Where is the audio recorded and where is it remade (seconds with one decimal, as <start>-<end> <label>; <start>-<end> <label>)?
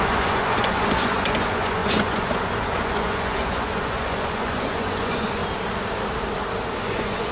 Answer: 0.0-5.4 remade; 5.4-6.8 recorded; 6.8-7.3 remade